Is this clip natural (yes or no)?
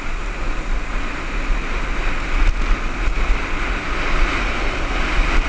yes